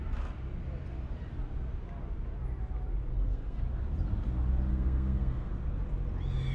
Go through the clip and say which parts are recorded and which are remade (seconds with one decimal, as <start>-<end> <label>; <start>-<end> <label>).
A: 0.0-3.1 recorded; 3.1-3.6 remade; 3.6-4.7 recorded; 4.7-5.5 remade; 5.5-6.5 recorded